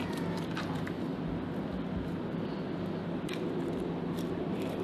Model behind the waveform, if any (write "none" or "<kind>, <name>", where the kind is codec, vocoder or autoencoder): none